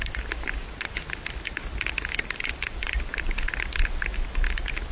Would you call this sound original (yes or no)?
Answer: yes